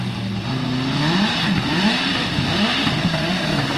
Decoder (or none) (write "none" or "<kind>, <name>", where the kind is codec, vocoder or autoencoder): none